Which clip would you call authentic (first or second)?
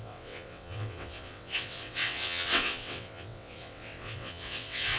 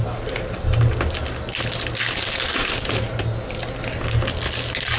second